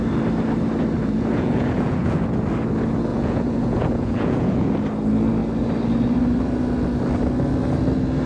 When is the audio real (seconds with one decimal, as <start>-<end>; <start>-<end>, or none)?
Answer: 0.0-1.0; 2.2-3.1; 4.7-8.3